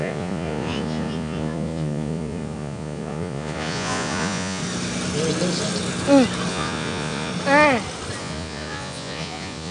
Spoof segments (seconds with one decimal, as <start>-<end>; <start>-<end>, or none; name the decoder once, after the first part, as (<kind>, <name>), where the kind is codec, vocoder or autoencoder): 0.0-4.6 (vocoder, Vocos); 6.5-7.3; 8.2-9.7